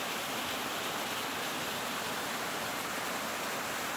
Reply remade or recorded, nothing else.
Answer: recorded